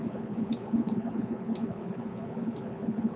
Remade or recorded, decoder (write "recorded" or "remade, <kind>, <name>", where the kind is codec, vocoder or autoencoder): remade, codec, HILCodec